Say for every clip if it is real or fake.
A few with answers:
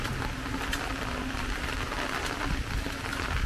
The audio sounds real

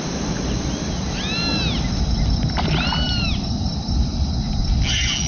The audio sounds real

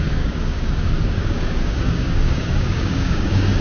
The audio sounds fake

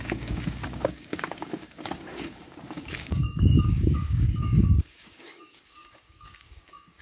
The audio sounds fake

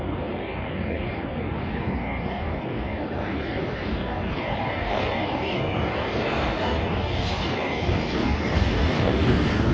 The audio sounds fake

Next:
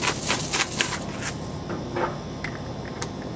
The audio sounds real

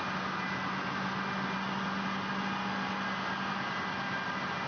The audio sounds real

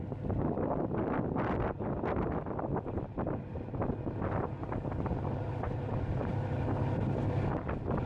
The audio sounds real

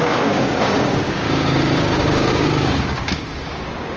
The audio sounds fake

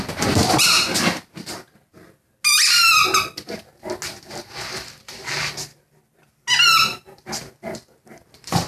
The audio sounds real